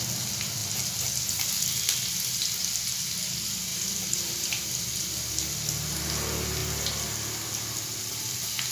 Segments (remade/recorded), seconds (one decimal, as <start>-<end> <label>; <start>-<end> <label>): 0.0-3.7 recorded; 3.7-4.8 remade; 4.8-8.7 recorded